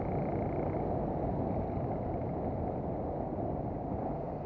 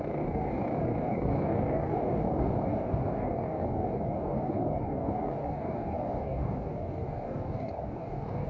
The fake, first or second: second